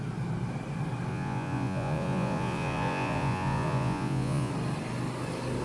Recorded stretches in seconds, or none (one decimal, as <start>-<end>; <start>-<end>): 0.0-1.1; 4.5-5.6